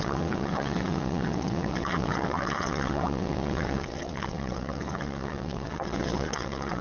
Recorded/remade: remade